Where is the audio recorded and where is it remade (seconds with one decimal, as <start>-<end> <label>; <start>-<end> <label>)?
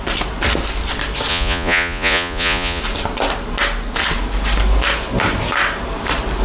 0.0-1.3 recorded; 1.3-2.8 remade; 2.8-6.4 recorded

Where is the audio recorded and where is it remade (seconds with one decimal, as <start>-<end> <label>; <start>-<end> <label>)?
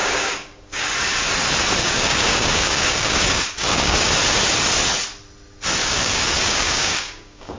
0.0-0.9 remade; 0.9-1.8 recorded; 1.8-4.1 remade; 4.1-5.8 recorded; 5.8-7.6 remade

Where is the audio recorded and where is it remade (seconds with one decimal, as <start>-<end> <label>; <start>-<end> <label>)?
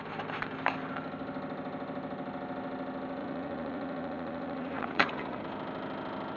0.0-3.2 recorded; 3.2-5.4 remade; 5.4-6.4 recorded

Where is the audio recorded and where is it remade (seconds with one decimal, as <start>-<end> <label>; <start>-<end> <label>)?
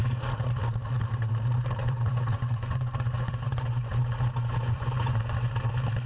0.0-1.8 recorded; 1.8-5.5 remade; 5.5-6.1 recorded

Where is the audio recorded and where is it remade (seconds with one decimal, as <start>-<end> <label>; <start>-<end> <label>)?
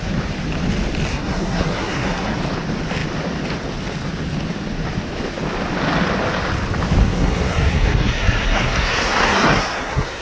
0.0-1.1 recorded; 1.1-2.4 remade; 2.4-7.0 recorded; 7.0-10.2 remade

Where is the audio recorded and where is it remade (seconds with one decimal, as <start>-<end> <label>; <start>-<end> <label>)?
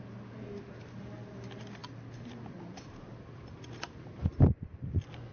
0.0-5.3 recorded